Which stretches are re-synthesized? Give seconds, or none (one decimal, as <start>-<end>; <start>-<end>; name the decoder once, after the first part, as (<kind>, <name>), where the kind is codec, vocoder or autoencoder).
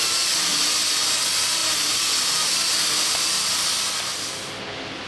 none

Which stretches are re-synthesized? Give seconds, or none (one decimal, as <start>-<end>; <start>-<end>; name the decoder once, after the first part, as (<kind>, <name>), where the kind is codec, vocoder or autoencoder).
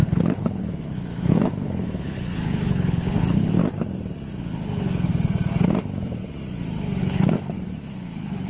0.0-3.6 (codec, HILCodec); 4.4-5.1; 5.8-6.2; 7.0-8.5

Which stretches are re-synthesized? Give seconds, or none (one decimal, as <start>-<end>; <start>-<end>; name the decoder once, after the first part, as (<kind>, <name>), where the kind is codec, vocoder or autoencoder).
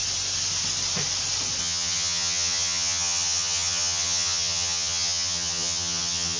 1.6-6.4 (vocoder, HiFi-GAN)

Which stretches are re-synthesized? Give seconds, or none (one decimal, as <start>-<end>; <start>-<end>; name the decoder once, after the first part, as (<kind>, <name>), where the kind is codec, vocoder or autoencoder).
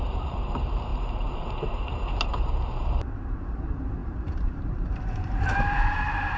0.0-6.4 (vocoder, BigVGAN v2)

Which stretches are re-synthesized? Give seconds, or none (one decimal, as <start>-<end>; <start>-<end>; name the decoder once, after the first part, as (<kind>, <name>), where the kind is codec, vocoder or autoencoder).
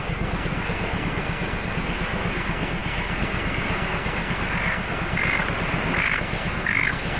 0.0-5.4 (codec, SNAC); 6.0-7.2